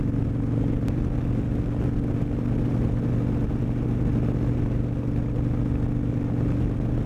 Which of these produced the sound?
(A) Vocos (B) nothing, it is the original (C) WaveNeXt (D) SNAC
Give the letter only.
B